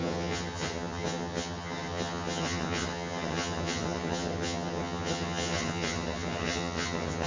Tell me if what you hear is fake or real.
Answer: fake